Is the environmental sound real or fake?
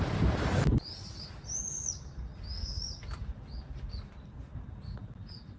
real